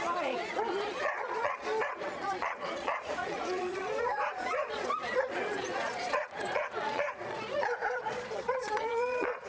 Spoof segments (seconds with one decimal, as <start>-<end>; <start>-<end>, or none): 0.0-9.5